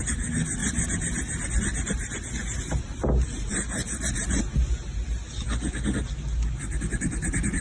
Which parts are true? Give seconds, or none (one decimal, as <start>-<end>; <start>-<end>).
0.0-7.6